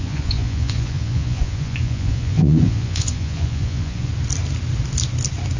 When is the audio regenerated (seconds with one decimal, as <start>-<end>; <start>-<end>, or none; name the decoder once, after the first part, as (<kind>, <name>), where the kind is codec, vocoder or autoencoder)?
0.0-4.1 (vocoder, Vocos)